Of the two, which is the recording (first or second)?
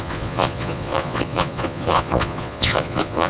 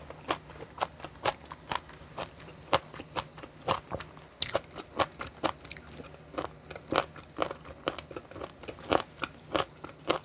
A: second